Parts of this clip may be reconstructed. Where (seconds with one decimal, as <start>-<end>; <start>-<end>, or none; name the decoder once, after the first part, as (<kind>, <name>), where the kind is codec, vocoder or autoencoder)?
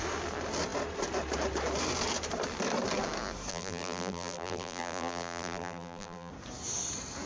3.5-6.3 (vocoder, BigVGAN v2)